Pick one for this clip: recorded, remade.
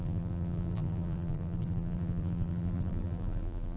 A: remade